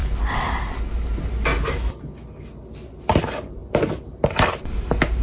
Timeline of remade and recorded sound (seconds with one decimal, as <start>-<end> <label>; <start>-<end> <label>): 0.0-0.9 recorded; 0.9-1.5 remade; 1.5-3.2 recorded; 3.2-3.6 remade; 3.6-4.2 recorded; 4.2-5.2 remade

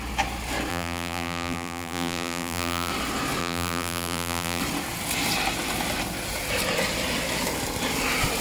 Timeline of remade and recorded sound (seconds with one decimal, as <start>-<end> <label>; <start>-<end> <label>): 0.0-0.7 recorded; 0.7-2.9 remade; 2.9-3.4 recorded; 3.4-4.6 remade; 4.6-8.4 recorded

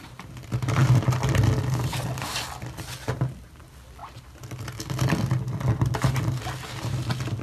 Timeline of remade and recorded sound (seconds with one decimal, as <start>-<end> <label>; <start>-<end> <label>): 0.0-7.4 recorded